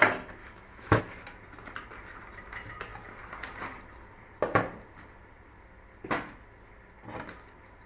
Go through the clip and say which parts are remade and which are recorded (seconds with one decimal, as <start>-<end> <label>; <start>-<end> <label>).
0.0-0.4 recorded; 0.4-1.0 remade; 1.0-7.9 recorded